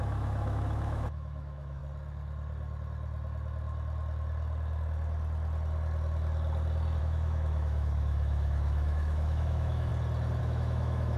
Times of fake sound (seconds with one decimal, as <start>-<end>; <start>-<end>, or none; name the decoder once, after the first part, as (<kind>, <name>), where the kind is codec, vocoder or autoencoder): 0.0-1.8 (autoencoder, DAC-VAE); 7.0-9.9; 10.4-11.2